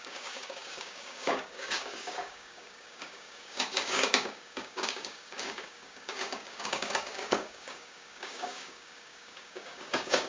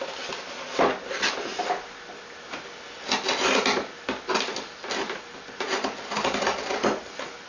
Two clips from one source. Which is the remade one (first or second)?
first